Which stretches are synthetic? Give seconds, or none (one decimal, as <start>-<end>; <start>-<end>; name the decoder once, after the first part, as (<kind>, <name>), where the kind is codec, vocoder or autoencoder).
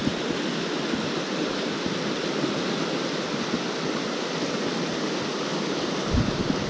none